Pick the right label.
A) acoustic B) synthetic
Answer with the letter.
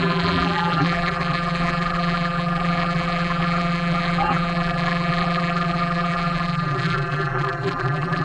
B